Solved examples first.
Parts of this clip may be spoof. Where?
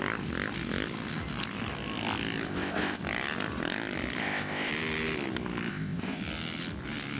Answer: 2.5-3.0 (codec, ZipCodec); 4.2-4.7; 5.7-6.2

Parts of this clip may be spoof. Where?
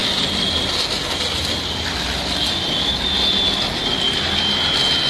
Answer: none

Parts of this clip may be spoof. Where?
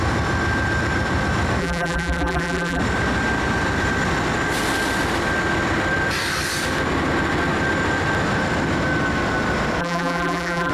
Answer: 1.6-2.8 (vocoder, BigVGAN v2); 9.8-10.7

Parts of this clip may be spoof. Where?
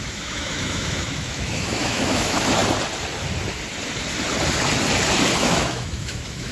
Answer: 0.0-2.6 (autoencoder, DAC-VAE); 5.4-6.5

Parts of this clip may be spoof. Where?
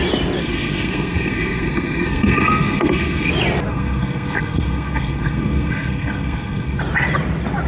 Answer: 0.4-3.3 (codec, SNAC); 3.7-6.8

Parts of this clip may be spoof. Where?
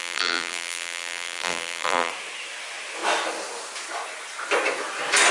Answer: 0.0-2.1 (vocoder, BigVGAN v2)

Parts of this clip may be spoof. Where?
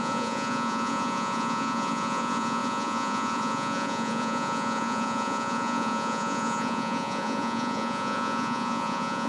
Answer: 0.0-9.3 (vocoder, Vocos)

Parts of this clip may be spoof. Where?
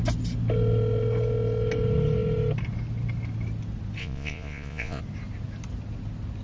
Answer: 4.0-5.0 (vocoder, Vocos)